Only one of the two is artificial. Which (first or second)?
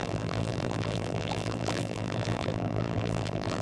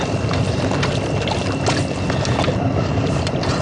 first